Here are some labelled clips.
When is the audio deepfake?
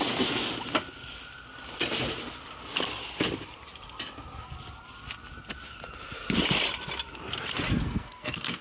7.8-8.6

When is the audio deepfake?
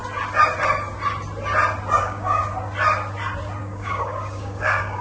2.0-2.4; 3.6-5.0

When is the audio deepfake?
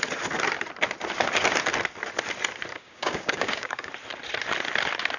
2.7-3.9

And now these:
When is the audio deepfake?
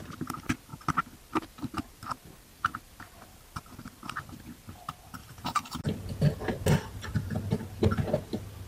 5.2-5.8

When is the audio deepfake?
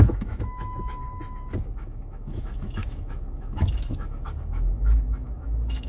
0.0-1.0; 1.7-5.9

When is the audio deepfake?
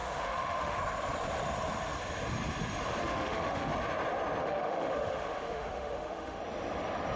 0.0-0.8; 3.0-3.7; 4.4-6.4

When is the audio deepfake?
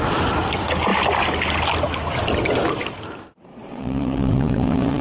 3.5-5.0